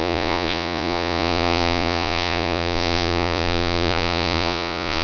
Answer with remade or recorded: remade